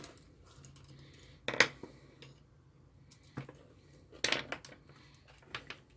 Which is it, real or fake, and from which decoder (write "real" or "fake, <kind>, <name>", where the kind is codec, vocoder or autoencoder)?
real